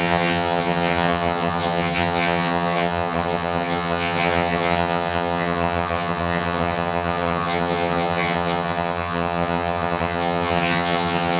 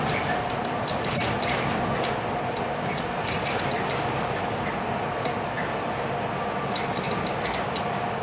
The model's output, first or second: first